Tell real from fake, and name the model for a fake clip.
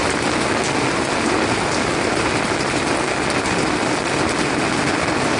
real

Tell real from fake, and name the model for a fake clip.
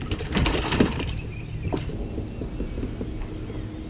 real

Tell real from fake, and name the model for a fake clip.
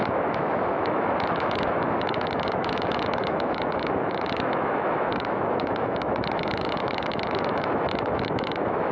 fake, autoencoder, DAC-VAE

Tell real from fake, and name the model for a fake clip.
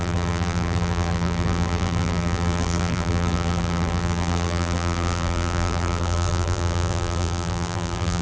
fake, vocoder, BigVGAN v2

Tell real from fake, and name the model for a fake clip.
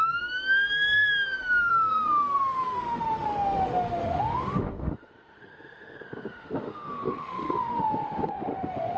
fake, autoencoder, DAC-VAE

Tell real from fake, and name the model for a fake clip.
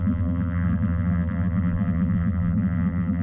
fake, vocoder, BigVGAN v2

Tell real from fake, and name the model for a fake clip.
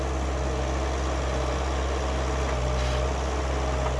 real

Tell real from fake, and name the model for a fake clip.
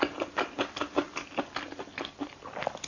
real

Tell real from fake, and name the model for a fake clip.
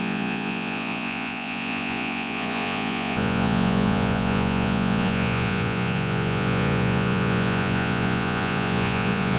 fake, vocoder, Vocos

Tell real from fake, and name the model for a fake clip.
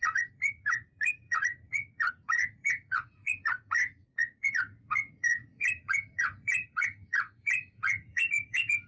fake, vocoder, Vocos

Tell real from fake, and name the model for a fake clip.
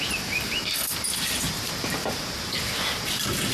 real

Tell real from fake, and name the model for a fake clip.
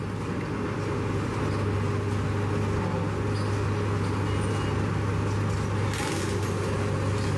real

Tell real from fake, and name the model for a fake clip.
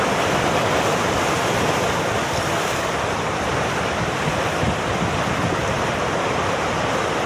real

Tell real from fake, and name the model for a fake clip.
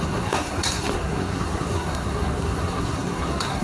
fake, codec, SNAC